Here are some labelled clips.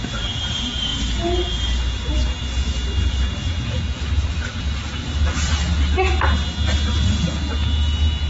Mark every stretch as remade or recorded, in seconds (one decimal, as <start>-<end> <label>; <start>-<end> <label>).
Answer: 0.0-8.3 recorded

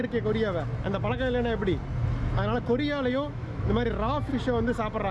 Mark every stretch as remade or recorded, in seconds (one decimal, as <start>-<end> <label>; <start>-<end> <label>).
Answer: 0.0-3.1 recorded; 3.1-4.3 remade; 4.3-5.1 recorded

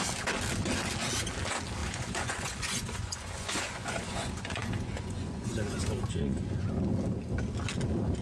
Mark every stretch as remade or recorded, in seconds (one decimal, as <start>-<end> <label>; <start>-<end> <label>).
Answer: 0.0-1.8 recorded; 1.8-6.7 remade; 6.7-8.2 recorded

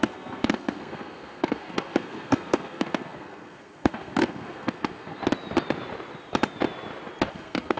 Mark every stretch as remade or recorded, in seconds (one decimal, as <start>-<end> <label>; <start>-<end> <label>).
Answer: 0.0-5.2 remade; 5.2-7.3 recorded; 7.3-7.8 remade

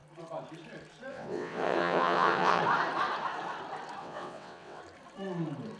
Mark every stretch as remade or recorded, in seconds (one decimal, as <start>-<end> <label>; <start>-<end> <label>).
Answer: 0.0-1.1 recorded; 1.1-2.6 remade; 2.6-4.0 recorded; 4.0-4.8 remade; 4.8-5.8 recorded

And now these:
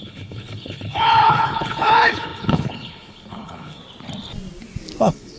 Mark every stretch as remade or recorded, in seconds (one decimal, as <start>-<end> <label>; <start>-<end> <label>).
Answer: 0.0-3.8 remade; 3.8-5.0 recorded; 5.0-5.4 remade

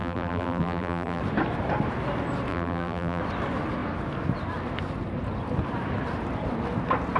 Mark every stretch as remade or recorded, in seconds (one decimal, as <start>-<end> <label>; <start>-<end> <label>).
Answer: 0.0-1.2 remade; 1.2-2.5 recorded; 2.5-3.2 remade; 3.2-7.2 recorded